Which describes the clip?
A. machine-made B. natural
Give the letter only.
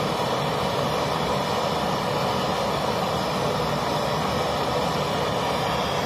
B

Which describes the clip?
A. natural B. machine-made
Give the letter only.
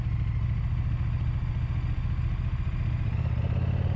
A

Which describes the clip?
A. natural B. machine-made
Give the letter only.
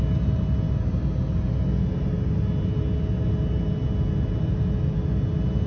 A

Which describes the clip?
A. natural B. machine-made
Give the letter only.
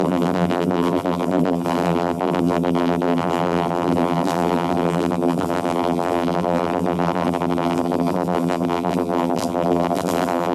B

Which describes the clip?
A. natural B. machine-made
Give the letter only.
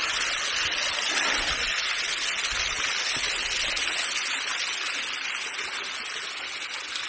A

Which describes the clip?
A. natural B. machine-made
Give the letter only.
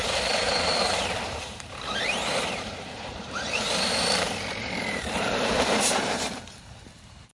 B